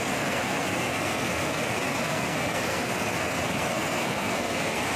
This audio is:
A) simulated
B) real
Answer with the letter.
A